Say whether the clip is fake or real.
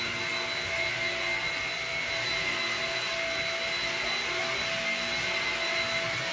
real